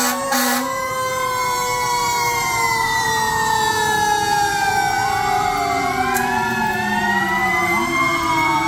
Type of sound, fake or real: fake